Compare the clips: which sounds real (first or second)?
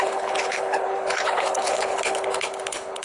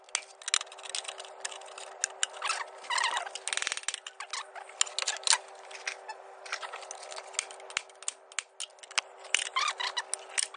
second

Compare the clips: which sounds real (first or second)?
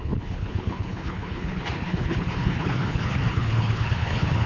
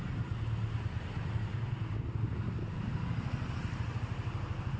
second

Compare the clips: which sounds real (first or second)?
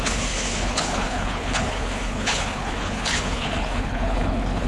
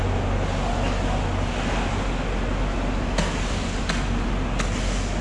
second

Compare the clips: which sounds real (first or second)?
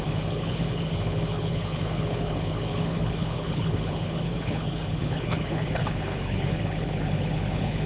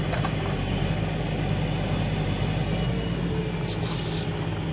second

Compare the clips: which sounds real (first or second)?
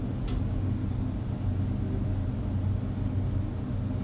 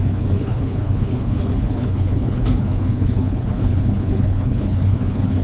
first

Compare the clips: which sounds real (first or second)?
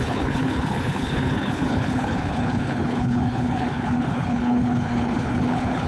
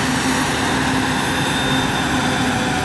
second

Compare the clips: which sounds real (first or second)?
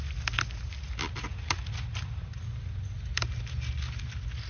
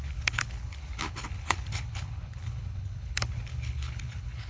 first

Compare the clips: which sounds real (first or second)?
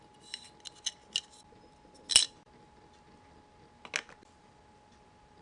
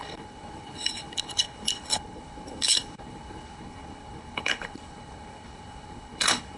first